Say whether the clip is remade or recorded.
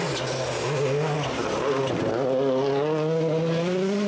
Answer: recorded